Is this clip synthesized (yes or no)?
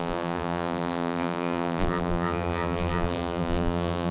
yes